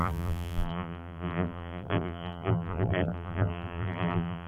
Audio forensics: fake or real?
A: fake